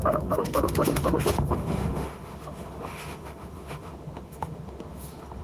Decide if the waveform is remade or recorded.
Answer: remade